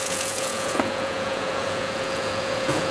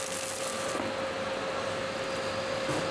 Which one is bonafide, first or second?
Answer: second